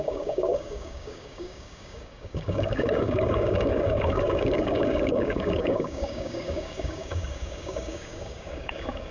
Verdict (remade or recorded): remade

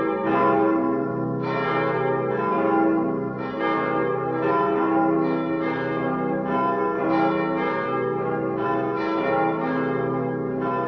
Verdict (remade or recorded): recorded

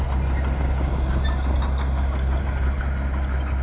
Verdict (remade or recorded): recorded